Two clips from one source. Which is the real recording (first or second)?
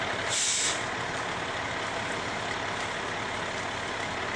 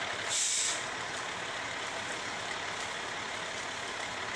first